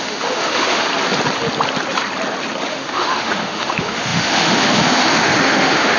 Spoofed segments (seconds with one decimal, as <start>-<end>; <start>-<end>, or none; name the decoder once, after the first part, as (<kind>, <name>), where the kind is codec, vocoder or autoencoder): 0.0-0.9 (autoencoder, DAC-VAE); 2.7-6.0